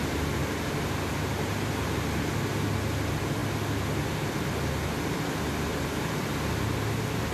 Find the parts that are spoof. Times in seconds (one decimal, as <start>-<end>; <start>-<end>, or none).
none